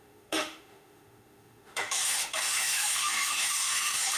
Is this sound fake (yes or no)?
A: yes